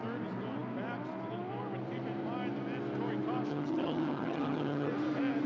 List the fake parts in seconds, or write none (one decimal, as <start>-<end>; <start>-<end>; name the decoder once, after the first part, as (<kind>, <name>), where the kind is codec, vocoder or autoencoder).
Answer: 3.5-4.9 (vocoder, HiFi-GAN)